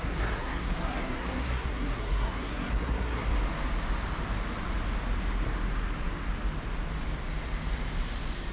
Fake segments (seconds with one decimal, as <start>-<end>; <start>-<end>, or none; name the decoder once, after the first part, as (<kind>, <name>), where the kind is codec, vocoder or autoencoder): 0.0-3.3 (codec, SNAC)